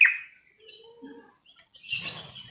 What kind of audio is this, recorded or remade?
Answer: recorded